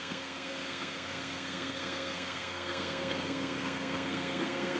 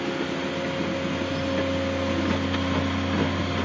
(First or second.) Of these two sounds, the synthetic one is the first